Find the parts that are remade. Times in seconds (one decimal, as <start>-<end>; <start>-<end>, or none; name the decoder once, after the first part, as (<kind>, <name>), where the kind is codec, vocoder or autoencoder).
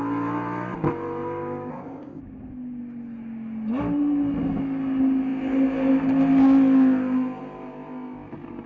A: 1.7-2.2 (codec, ZipCodec)